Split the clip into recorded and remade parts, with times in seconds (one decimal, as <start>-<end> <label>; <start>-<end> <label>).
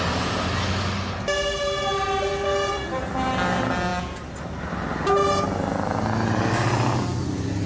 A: 0.0-7.7 recorded